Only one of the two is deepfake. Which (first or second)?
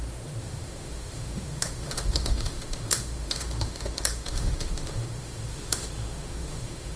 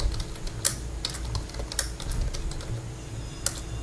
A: first